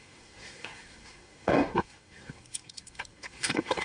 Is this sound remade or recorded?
remade